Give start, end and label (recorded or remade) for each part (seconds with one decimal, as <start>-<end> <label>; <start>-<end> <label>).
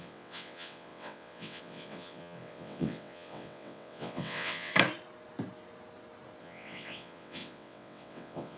0.0-4.7 remade; 4.7-6.4 recorded; 6.4-8.6 remade